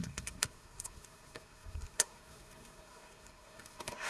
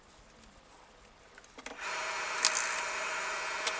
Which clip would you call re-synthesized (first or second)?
first